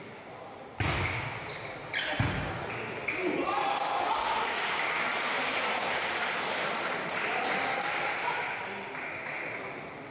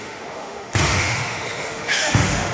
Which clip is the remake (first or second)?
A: second